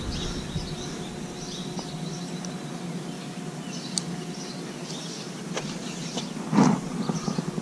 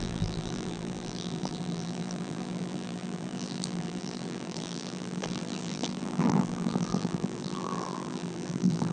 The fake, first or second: second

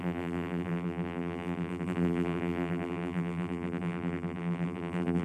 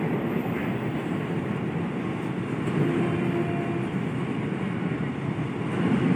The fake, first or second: first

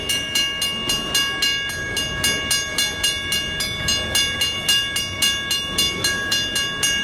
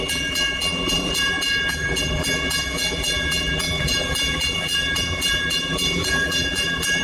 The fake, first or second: second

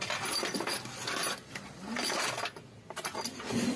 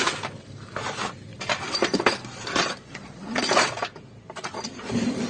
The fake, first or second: second